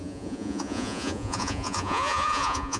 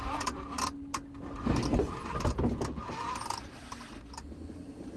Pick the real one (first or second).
second